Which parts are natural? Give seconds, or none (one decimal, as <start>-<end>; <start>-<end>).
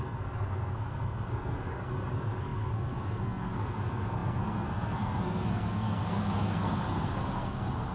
none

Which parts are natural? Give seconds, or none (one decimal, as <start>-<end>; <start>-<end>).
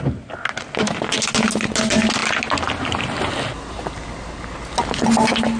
0.0-5.6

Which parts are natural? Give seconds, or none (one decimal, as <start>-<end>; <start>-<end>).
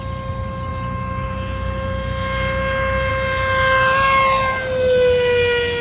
0.0-5.8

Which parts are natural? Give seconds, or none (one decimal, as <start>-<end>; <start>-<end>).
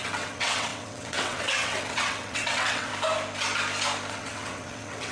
2.9-4.1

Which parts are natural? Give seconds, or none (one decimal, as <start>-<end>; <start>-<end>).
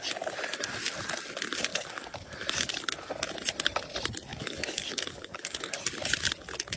0.0-1.7; 2.8-4.3; 5.8-6.8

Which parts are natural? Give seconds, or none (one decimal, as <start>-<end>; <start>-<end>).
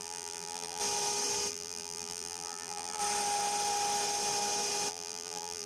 0.8-1.5; 3.0-4.9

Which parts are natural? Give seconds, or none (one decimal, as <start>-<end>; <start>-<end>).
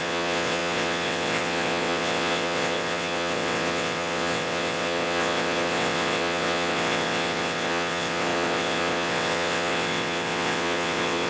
none